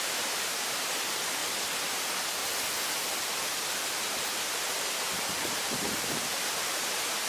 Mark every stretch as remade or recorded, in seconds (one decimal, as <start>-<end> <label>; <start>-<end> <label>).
0.0-2.4 remade; 2.4-4.2 recorded; 4.2-7.3 remade